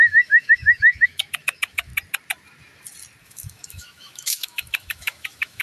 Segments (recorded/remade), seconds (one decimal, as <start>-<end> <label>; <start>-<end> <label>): 0.0-1.9 remade; 1.9-3.2 recorded; 3.2-5.6 remade